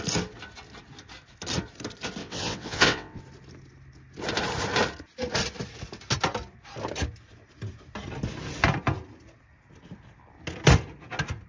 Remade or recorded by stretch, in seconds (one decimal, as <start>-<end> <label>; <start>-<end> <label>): 0.0-2.2 recorded; 2.2-3.2 remade; 3.2-11.5 recorded